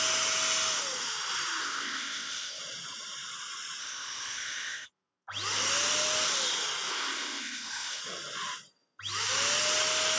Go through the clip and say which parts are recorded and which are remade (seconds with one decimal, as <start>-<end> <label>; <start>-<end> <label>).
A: 0.0-1.6 recorded; 1.6-2.6 remade; 2.6-3.8 recorded; 3.8-4.9 remade; 4.9-6.9 recorded; 6.9-8.0 remade; 8.0-10.2 recorded